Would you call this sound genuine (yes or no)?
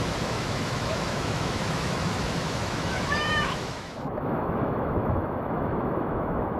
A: no